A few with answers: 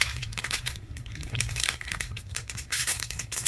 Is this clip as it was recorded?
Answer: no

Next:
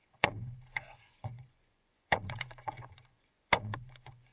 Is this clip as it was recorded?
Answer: no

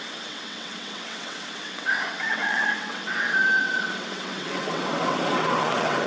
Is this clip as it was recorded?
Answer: no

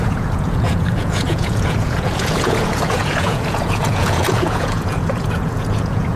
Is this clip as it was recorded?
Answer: no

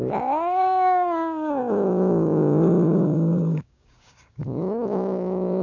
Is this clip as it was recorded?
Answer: no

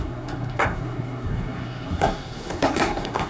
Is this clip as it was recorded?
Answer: no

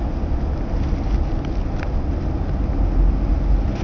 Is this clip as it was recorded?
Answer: yes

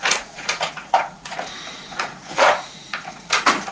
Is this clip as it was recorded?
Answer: no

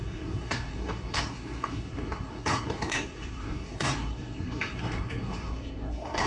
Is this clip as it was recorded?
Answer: no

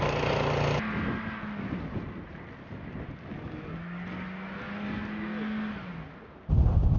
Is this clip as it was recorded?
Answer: yes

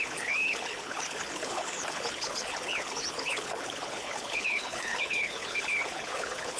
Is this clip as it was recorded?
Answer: no